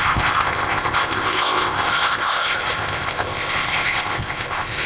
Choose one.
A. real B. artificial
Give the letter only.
B